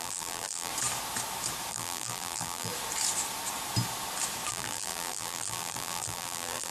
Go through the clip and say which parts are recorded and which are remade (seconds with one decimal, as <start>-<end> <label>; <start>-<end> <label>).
0.0-0.7 remade; 0.7-1.7 recorded; 1.7-2.7 remade; 2.7-4.5 recorded; 4.5-6.7 remade